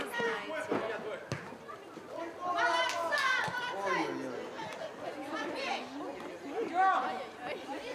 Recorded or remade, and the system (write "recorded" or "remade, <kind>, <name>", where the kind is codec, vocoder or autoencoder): recorded